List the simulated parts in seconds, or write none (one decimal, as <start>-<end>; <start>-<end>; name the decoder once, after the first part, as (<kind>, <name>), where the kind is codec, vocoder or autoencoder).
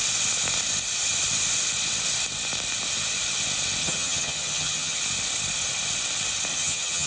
3.8-5.0 (vocoder, HiFi-GAN); 6.5-7.1